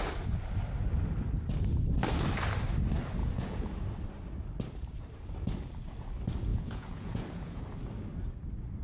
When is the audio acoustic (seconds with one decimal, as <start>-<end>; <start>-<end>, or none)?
0.0-3.2; 3.8-6.5; 7.6-8.8